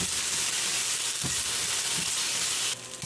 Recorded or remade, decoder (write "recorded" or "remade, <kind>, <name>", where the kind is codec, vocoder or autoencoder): recorded